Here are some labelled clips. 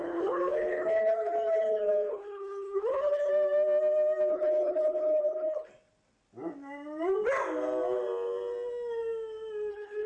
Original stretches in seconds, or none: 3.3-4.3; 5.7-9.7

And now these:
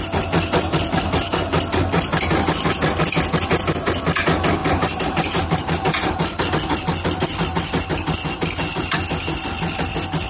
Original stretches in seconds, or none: 0.0-4.6; 6.5-10.3

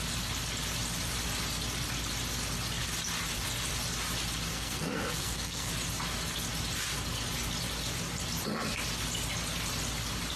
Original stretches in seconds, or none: 0.0-4.5; 5.7-10.4

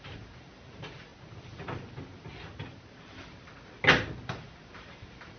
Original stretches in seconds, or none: 1.1-4.2

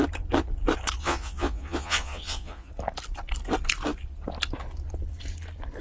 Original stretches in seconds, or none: 0.0-1.0; 2.7-5.8

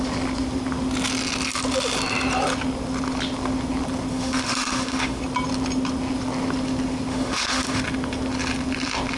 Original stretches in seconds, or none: 0.0-4.1; 5.2-7.1; 7.8-9.2

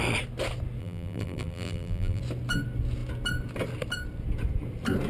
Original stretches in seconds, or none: 0.0-0.8; 2.2-5.1

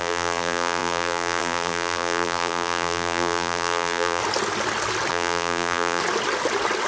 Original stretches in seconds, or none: 4.2-5.1; 6.0-6.9